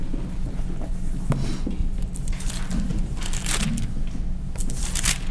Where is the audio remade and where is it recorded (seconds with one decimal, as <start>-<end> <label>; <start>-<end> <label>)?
0.0-1.8 recorded; 1.8-2.5 remade; 2.5-2.9 recorded; 2.9-3.5 remade; 3.5-5.3 recorded

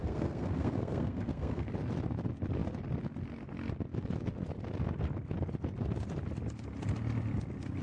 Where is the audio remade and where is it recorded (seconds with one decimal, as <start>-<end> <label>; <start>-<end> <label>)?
0.0-1.7 remade; 1.7-7.8 recorded

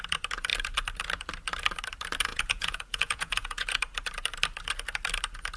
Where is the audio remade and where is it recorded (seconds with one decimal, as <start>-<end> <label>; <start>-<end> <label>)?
0.0-2.3 recorded; 2.3-3.8 remade; 3.8-5.6 recorded